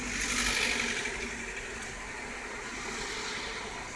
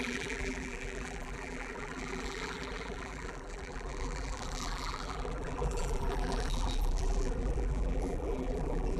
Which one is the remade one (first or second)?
second